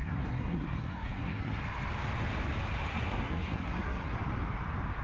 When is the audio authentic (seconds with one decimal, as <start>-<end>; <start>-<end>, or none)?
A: 1.6-2.9; 4.1-5.0